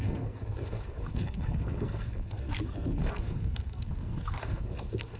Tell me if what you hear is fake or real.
fake